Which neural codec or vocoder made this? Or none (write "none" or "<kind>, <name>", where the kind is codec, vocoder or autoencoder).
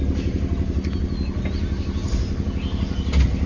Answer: none